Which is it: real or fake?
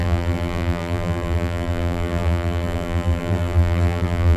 fake